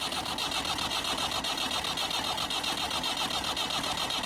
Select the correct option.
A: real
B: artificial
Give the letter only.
A